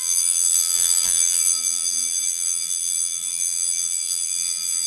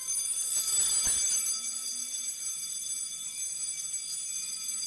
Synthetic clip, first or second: first